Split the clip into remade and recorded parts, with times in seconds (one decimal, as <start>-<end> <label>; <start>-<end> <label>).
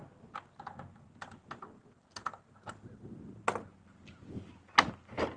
0.0-5.4 recorded